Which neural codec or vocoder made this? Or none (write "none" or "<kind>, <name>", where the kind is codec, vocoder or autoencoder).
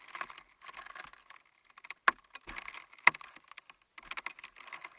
none